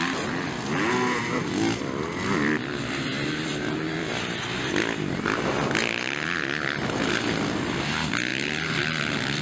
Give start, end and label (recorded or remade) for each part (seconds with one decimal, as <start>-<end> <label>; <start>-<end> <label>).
0.0-8.3 recorded; 8.3-9.4 remade